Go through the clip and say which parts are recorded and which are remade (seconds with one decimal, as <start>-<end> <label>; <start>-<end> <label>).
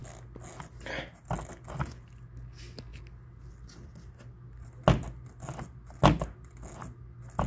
0.0-7.5 recorded